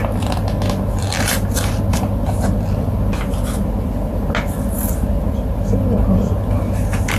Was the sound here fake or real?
real